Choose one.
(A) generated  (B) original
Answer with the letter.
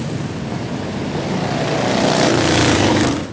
B